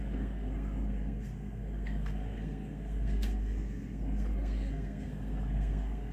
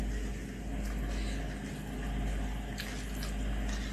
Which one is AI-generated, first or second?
first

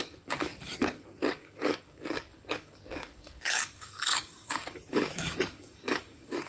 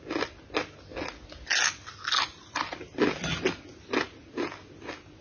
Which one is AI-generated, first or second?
first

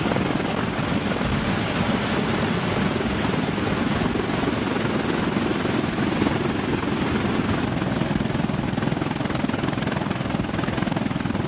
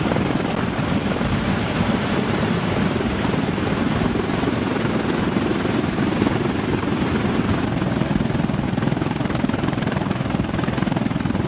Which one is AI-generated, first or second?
second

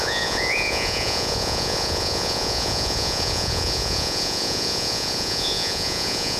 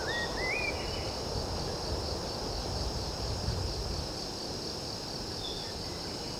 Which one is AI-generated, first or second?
first